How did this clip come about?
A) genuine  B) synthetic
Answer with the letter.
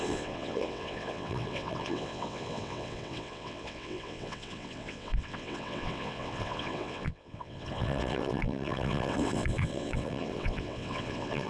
B